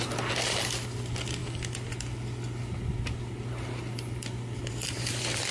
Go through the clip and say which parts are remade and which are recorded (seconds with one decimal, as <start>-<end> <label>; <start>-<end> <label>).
0.0-5.5 recorded